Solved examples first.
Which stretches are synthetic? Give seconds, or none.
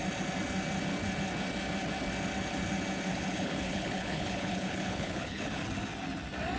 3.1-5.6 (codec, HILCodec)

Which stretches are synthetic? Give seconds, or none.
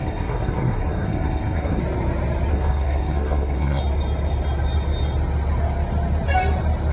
0.0-1.8 (codec, SNAC); 2.5-3.8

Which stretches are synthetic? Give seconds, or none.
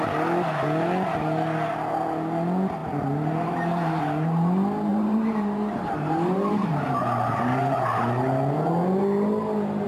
2.8-4.0 (vocoder, BigVGAN v2); 4.9-6.7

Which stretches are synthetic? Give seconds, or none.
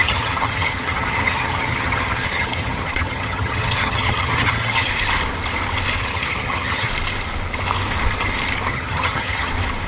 0.0-4.9 (vocoder, HiFi-GAN); 6.0-6.9; 8.7-9.5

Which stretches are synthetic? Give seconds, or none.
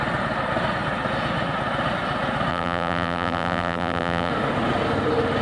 2.5-4.3 (vocoder, BigVGAN v2)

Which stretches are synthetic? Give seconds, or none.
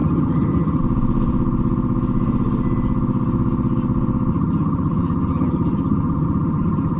0.0-0.8 (vocoder, HiFi-GAN); 4.3-7.0